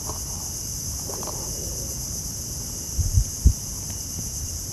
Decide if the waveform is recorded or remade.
recorded